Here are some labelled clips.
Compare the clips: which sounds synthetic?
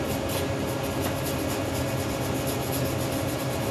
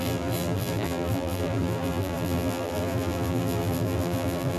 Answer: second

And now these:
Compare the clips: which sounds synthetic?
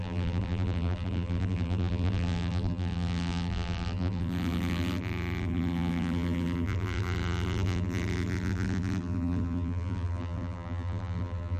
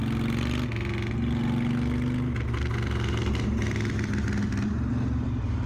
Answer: first